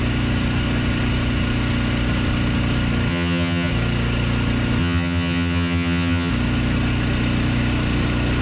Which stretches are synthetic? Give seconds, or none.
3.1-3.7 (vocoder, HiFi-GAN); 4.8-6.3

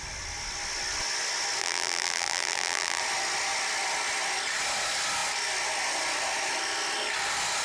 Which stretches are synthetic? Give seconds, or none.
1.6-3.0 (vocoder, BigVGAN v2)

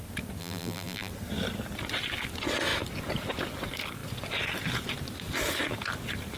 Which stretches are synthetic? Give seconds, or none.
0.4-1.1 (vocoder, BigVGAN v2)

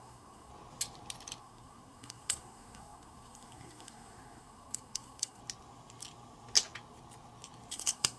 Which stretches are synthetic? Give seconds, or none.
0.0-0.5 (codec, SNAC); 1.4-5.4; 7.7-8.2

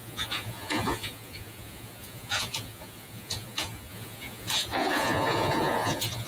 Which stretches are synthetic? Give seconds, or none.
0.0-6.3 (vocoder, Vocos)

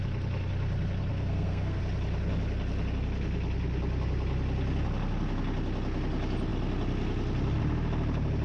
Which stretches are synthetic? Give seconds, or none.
1.1-1.8 (codec, SNAC)

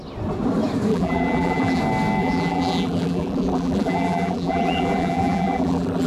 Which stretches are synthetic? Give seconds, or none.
0.9-1.8 (vocoder, BigVGAN v2); 2.2-6.1

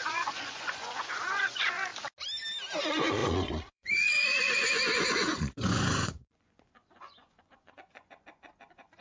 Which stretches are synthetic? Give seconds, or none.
0.0-1.9 (vocoder, Vocos); 2.8-9.0